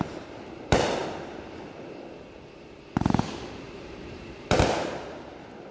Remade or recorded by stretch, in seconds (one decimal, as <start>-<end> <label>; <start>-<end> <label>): 0.0-1.0 remade; 1.0-3.0 recorded; 3.0-5.7 remade